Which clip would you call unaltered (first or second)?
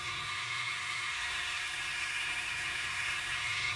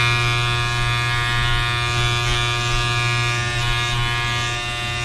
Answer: second